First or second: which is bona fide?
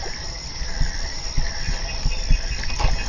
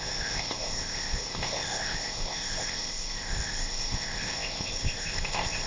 first